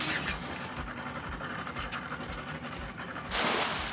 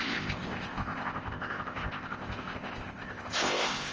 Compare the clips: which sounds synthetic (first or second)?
second